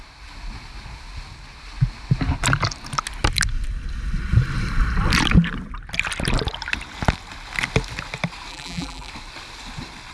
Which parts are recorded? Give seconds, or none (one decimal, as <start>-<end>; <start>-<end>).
0.0-8.5; 9.1-10.1